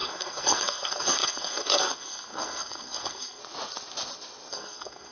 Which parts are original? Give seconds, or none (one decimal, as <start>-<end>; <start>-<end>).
3.4-4.5